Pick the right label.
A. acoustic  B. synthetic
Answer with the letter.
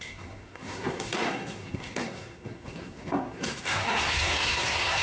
B